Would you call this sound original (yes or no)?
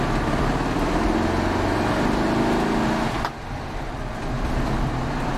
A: yes